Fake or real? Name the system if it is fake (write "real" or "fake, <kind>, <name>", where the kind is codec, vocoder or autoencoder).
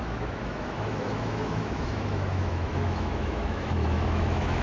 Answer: fake, autoencoder, DAC-VAE